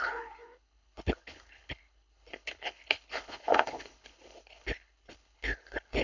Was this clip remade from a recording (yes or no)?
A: yes